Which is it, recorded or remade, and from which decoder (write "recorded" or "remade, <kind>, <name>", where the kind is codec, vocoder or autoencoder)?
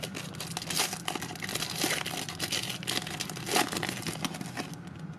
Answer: recorded